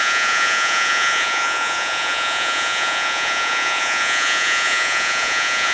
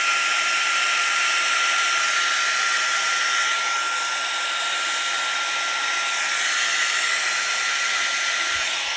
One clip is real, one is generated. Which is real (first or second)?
second